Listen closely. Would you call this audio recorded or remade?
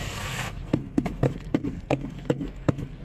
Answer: remade